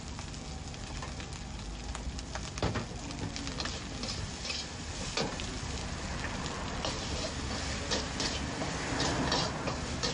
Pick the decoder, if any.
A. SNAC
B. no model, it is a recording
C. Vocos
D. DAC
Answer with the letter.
B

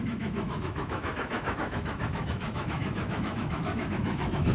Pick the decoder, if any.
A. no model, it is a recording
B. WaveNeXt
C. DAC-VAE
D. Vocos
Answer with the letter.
C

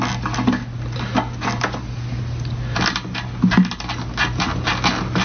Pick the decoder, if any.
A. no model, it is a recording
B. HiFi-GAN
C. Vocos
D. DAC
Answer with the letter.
A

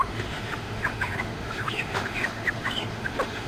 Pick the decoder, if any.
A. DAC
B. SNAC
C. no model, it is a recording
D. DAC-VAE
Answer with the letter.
D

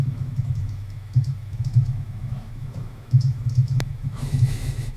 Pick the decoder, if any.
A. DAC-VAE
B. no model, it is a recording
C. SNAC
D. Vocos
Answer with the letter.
A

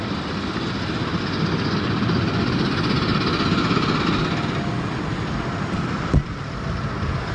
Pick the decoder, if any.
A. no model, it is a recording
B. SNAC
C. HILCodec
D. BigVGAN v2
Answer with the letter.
A